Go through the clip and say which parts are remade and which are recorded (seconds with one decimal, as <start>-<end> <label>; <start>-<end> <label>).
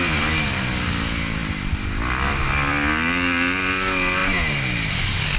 0.0-5.4 recorded